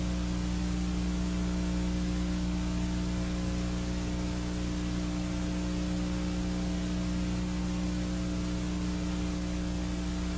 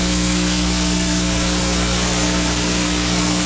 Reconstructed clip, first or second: second